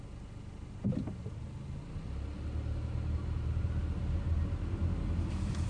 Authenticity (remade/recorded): recorded